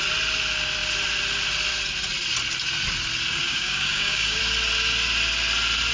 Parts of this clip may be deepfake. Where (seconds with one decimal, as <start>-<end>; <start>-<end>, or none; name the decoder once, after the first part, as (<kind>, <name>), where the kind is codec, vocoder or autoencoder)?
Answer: 3.4-4.4 (codec, DAC)